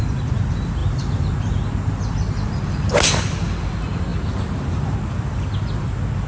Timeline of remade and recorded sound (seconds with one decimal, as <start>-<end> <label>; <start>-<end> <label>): 0.0-0.8 recorded; 0.8-2.0 remade; 2.0-6.3 recorded